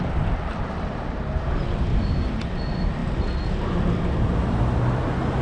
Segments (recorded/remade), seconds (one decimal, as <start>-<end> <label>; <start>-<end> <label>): 0.0-1.9 recorded; 1.9-2.5 remade; 2.5-5.4 recorded